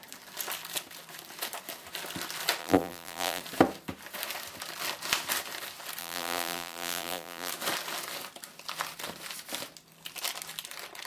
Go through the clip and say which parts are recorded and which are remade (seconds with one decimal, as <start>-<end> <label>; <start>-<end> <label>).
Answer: 0.0-2.6 recorded; 2.6-3.4 remade; 3.4-6.0 recorded; 6.0-7.5 remade; 7.5-11.1 recorded